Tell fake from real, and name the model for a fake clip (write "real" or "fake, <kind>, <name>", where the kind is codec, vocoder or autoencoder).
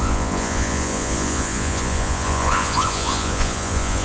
fake, vocoder, Vocos